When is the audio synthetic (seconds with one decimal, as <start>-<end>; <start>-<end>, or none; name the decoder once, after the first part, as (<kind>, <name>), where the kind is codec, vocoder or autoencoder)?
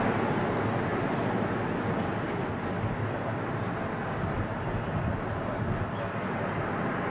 none